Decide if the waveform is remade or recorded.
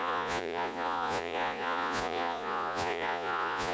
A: remade